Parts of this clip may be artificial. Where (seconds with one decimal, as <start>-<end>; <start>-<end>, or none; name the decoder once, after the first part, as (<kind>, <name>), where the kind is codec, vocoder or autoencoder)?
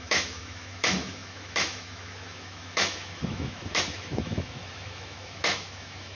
0.0-6.1 (autoencoder, DAC-VAE)